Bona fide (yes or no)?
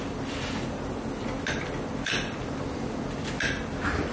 yes